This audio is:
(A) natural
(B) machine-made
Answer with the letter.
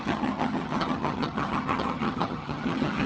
B